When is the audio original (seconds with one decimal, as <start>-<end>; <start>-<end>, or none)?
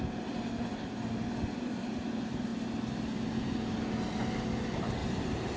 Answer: 0.0-5.0